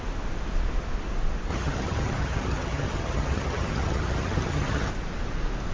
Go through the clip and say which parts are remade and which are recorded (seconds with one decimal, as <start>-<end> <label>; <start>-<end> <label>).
0.0-1.5 recorded; 1.5-4.9 remade; 4.9-5.7 recorded